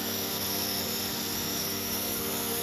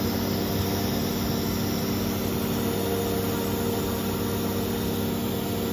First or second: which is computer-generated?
first